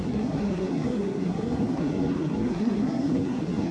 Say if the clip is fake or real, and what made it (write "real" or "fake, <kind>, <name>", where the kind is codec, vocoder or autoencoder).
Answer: fake, codec, SNAC